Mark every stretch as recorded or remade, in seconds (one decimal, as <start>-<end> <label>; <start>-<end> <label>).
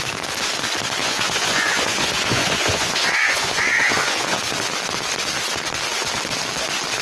0.0-1.0 recorded; 1.0-4.4 remade; 4.4-7.0 recorded